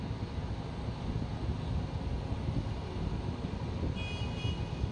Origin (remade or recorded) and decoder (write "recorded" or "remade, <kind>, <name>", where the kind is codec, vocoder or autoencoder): recorded